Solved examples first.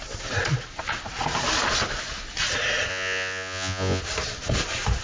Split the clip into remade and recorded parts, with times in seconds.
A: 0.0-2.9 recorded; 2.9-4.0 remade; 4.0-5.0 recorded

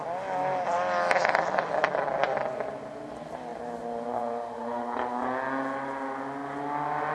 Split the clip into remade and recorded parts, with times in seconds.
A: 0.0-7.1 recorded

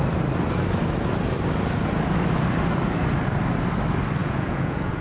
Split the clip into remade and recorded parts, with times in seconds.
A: 0.0-4.2 recorded; 4.2-5.0 remade

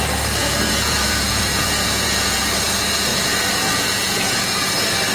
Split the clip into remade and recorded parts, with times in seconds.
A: 0.0-0.4 recorded; 0.4-2.5 remade; 2.5-3.1 recorded; 3.1-4.6 remade; 4.6-5.1 recorded

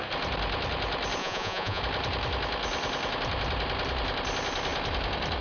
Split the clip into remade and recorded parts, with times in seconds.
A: 0.0-1.2 recorded; 1.2-1.8 remade; 1.8-5.4 recorded

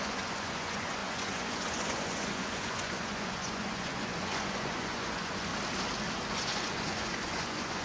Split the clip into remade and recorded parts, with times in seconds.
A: 0.0-5.5 remade; 5.5-6.3 recorded; 6.3-7.8 remade

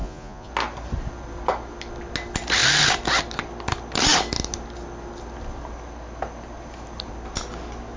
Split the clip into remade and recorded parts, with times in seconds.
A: 0.0-0.5 remade; 0.5-8.0 recorded

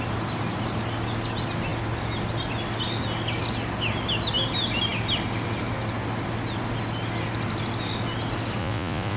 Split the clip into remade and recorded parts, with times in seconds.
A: 0.0-8.6 recorded; 8.6-9.2 remade